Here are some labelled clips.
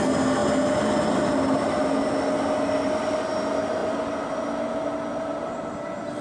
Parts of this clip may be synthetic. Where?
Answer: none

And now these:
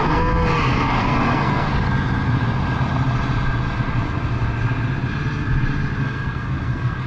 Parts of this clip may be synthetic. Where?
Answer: 0.0-1.7 (codec, SNAC); 6.0-7.1

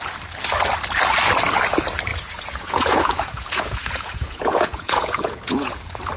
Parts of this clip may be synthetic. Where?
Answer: 2.1-5.8 (vocoder, Vocos)

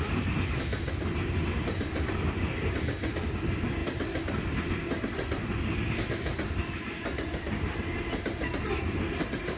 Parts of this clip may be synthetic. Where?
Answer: none

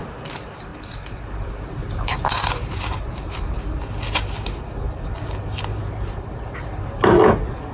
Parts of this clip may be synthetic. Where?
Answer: 0.7-3.8 (vocoder, BigVGAN v2); 5.7-6.8

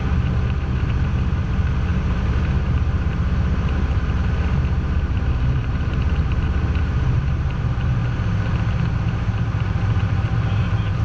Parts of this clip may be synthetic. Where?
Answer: 0.0-8.0 (vocoder, BigVGAN v2); 9.0-11.0

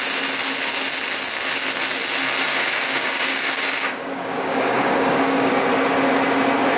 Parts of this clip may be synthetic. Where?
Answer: 2.5-5.5 (codec, DAC)

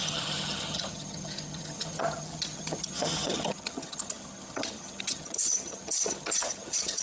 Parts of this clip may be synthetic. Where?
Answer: 0.0-7.0 (vocoder, HiFi-GAN)